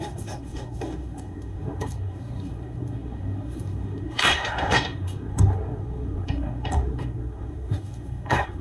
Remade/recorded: remade